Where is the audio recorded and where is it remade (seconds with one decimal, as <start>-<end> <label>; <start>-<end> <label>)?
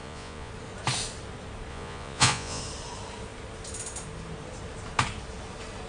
0.0-0.5 remade; 0.5-1.7 recorded; 1.7-2.6 remade; 2.6-5.9 recorded